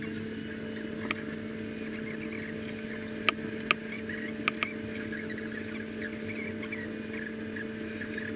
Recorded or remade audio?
recorded